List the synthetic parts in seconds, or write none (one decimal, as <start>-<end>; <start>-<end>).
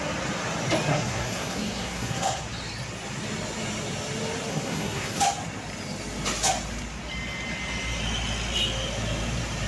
0.9-2.4; 4.5-5.2